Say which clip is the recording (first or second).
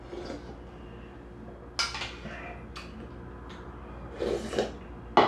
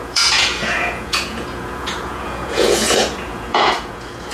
first